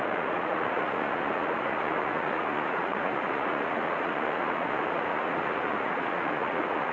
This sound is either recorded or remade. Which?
remade